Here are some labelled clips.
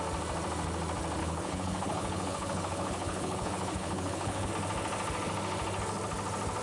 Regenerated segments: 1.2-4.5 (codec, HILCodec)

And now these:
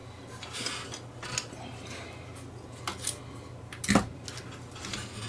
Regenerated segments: none

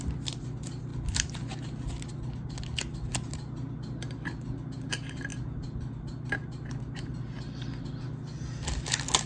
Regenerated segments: none

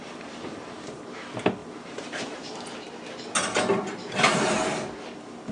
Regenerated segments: 0.0-1.1 (vocoder, BigVGAN v2); 1.6-2.6

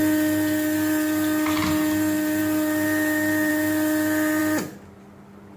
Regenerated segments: none

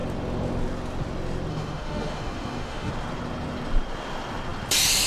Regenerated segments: 1.5-2.9 (autoencoder, DAC-VAE)

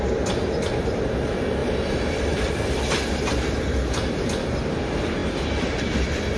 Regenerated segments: 1.6-2.5 (vocoder, BigVGAN v2)